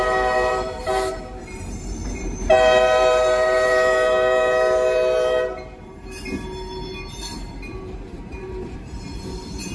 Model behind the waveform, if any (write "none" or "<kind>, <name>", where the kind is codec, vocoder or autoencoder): vocoder, BigVGAN v2